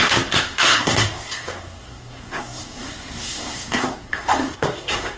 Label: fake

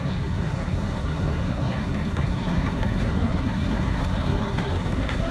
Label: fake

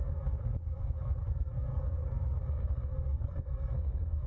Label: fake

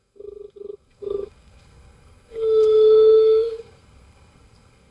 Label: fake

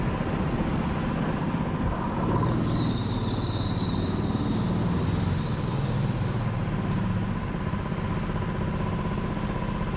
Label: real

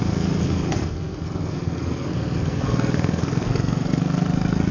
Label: fake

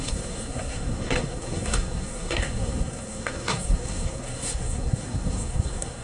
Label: fake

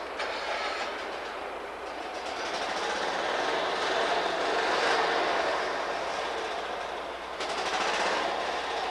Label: real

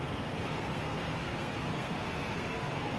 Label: fake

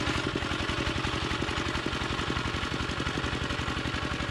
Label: real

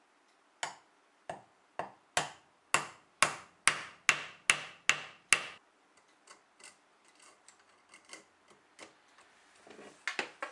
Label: real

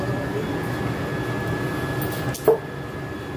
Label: real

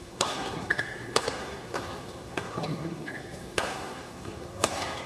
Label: fake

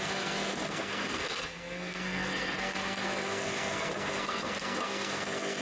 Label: fake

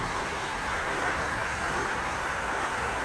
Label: fake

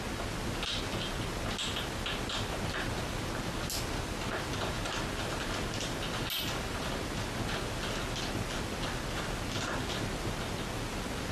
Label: real